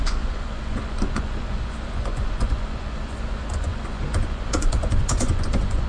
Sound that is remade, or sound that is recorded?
remade